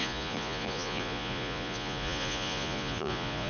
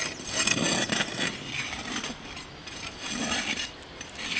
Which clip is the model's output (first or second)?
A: first